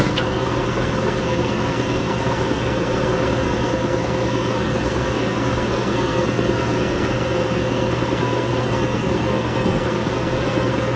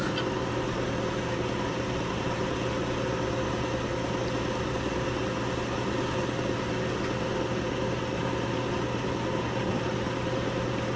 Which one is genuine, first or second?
second